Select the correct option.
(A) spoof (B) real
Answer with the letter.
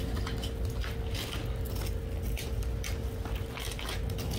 B